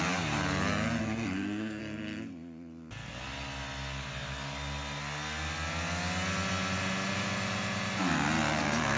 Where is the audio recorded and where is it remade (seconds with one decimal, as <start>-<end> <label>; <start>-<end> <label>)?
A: 0.0-1.0 recorded; 1.0-1.8 remade; 1.8-9.0 recorded